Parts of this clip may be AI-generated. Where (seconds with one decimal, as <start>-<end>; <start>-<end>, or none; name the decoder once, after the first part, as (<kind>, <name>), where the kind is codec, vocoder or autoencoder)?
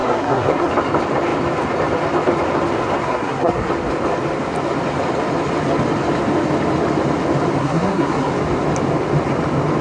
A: 0.0-0.7 (codec, SNAC); 3.0-3.7; 7.6-8.3